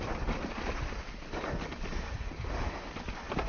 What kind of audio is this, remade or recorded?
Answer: recorded